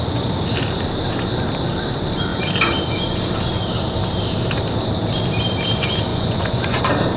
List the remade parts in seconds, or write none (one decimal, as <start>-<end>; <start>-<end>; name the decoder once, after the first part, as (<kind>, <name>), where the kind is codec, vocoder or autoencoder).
6.1-6.8 (vocoder, Vocos)